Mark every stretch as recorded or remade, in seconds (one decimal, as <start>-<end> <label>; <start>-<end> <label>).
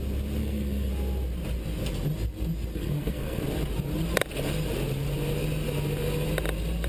0.0-0.4 recorded; 0.4-0.9 remade; 0.9-2.7 recorded; 2.7-3.4 remade; 3.4-6.9 recorded